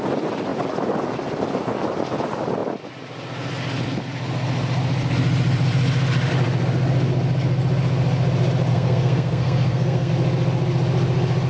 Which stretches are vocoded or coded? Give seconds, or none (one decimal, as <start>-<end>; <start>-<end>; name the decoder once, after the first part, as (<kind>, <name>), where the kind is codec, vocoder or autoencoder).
8.7-10.1 (codec, SNAC)